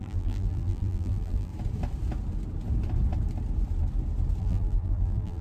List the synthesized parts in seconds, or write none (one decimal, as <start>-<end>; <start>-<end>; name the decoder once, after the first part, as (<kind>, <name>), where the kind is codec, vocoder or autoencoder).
0.0-1.5 (vocoder, BigVGAN v2); 4.4-5.4